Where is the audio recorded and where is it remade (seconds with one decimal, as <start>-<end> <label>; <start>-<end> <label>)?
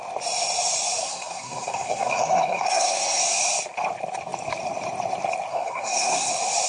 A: 0.0-1.0 recorded; 1.0-3.2 remade; 3.2-5.5 recorded; 5.5-6.3 remade; 6.3-6.7 recorded